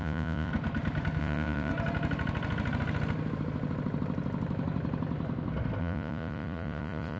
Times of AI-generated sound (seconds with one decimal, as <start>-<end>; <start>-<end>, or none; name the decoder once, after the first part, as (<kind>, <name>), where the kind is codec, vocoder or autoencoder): 0.0-0.5 (vocoder, Vocos); 1.2-1.7; 5.8-7.2